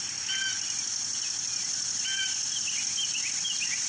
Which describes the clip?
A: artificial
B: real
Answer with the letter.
B